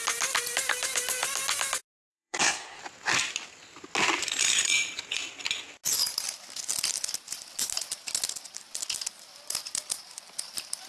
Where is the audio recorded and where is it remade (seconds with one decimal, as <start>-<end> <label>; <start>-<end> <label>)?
0.0-2.1 recorded; 2.1-2.8 remade; 2.8-10.9 recorded